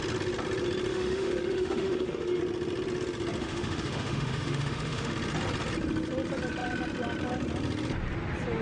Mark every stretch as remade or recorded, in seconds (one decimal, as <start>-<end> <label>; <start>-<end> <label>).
0.0-0.9 recorded; 0.9-2.4 remade; 2.4-3.4 recorded; 3.4-5.1 remade; 5.1-8.6 recorded